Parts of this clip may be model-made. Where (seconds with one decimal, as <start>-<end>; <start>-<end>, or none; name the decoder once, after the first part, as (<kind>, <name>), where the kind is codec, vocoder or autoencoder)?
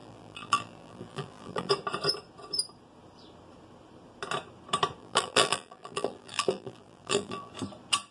0.0-1.7 (vocoder, BigVGAN v2); 5.0-7.5